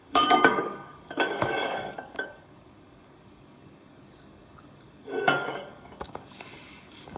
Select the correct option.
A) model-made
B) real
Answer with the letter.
A